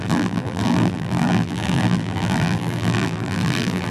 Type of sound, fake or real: fake